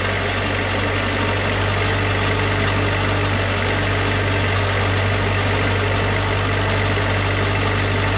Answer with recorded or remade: recorded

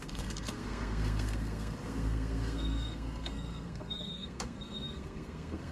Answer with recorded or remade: remade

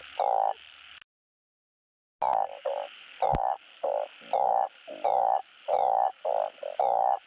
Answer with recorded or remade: recorded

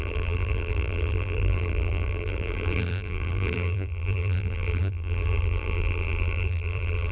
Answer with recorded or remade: remade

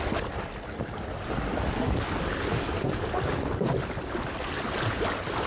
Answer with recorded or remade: recorded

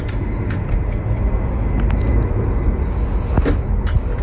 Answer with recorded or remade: recorded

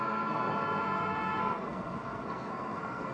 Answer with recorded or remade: remade